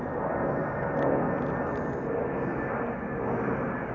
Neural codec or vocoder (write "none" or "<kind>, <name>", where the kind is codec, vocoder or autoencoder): none